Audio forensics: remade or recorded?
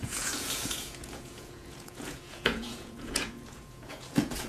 remade